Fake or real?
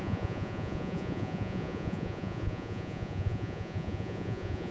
fake